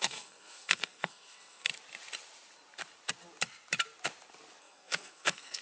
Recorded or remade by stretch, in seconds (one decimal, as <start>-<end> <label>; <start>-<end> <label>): 0.0-1.7 remade; 1.7-4.6 recorded; 4.6-5.6 remade